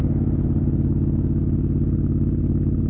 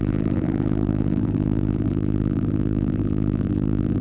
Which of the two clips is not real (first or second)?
second